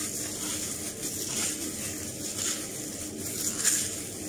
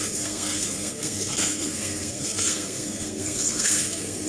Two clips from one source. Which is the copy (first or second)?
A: second